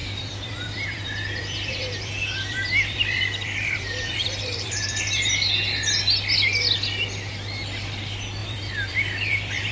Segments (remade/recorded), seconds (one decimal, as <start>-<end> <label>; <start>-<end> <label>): 0.0-5.0 remade; 5.0-8.4 recorded; 8.4-9.7 remade